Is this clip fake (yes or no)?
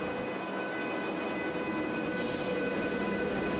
no